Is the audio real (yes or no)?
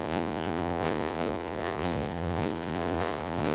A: no